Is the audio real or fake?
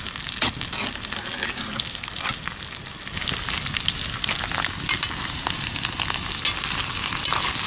real